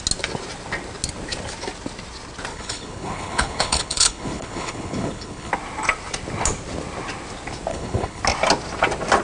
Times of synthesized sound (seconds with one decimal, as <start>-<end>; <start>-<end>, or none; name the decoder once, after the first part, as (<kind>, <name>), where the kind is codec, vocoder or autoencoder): 2.5-5.5 (codec, HILCodec); 7.7-8.2